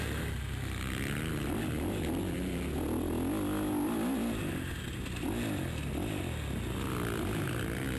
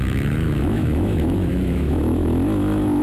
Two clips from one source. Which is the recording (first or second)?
first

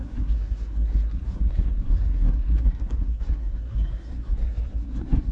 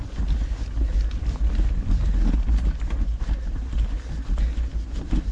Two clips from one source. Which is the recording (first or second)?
second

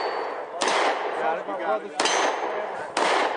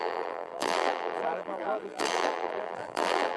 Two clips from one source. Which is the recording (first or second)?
first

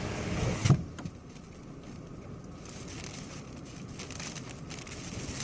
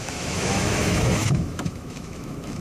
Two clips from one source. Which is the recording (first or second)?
first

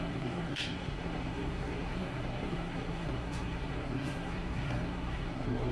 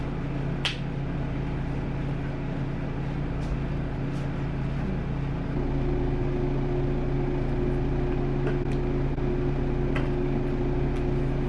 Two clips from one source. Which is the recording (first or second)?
second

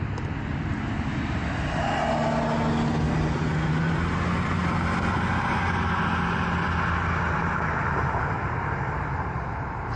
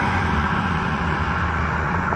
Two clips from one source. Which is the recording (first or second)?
first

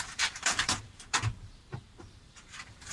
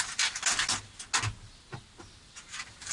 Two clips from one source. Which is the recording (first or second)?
second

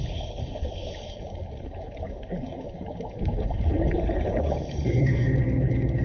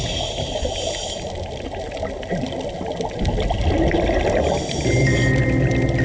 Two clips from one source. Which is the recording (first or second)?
second